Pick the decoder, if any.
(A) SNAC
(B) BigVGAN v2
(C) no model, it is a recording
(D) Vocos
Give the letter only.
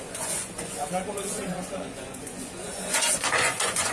D